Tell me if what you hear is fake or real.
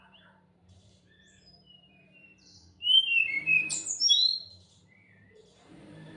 fake